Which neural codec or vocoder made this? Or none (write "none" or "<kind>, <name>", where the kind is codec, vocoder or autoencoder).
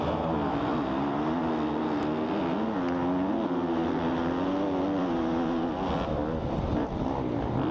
none